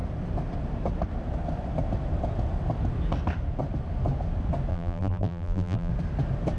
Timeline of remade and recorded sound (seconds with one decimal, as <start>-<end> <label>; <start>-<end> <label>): 0.0-4.7 recorded; 4.7-5.9 remade; 5.9-6.6 recorded